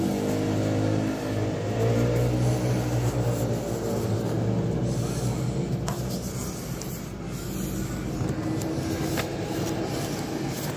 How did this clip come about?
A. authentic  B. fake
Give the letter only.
A